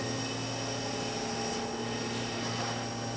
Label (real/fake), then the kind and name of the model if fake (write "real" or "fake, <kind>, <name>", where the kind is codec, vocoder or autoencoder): real